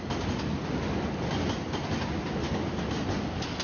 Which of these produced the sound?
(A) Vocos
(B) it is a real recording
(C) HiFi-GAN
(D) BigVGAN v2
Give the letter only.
B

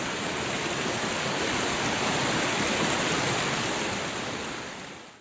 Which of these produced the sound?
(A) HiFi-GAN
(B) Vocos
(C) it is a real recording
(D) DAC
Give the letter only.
C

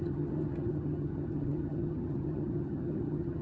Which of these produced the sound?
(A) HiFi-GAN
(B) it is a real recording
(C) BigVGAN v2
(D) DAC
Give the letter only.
A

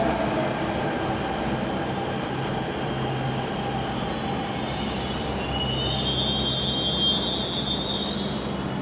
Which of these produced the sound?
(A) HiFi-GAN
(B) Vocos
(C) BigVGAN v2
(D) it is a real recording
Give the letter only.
D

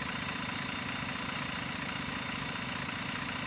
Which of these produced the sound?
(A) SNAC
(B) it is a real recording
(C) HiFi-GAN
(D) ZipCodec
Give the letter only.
B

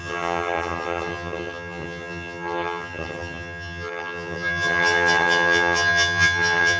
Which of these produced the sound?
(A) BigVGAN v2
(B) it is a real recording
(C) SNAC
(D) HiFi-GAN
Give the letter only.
D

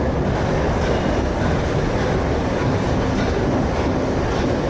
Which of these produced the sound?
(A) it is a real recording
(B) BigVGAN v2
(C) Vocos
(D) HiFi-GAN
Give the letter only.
A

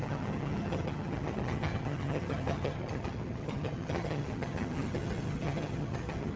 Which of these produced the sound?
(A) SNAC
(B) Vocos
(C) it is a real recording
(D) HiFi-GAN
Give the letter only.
D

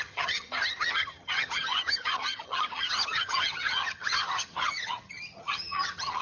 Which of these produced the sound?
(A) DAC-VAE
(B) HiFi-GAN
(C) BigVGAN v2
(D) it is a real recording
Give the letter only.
B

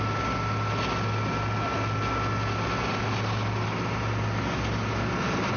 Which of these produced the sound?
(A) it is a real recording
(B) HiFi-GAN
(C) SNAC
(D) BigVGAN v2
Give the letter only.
A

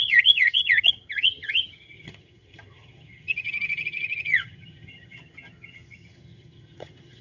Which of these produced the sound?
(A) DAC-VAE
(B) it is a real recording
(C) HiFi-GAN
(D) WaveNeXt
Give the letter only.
C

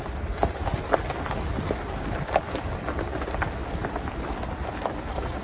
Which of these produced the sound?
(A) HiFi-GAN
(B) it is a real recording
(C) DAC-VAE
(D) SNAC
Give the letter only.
B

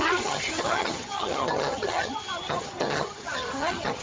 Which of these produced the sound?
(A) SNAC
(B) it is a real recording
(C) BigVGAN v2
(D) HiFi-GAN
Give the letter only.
D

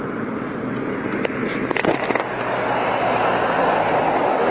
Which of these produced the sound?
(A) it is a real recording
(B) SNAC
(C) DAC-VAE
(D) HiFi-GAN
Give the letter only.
A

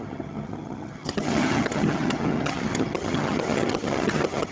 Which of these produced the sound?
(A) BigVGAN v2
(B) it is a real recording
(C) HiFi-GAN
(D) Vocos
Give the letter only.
C